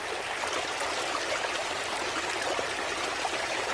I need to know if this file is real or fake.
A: real